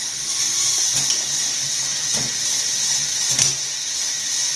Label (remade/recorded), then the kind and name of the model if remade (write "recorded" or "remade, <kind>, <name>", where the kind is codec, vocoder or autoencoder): recorded